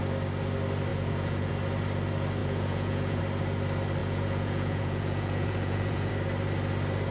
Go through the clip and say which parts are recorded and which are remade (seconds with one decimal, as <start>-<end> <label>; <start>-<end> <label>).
0.0-0.9 recorded; 0.9-1.5 remade; 1.5-2.4 recorded; 2.4-3.2 remade; 3.2-4.0 recorded; 4.0-6.1 remade; 6.1-7.1 recorded